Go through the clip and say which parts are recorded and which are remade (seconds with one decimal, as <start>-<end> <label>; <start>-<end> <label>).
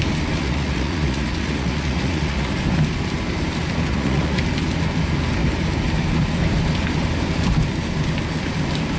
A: 0.0-0.4 recorded; 0.4-2.5 remade; 2.5-3.9 recorded; 3.9-4.4 remade; 4.4-9.0 recorded